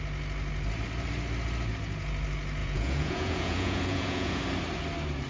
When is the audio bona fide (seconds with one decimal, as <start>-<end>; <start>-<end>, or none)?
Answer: 0.0-2.6; 4.4-5.3